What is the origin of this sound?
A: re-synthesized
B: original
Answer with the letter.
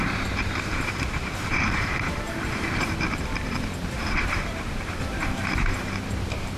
A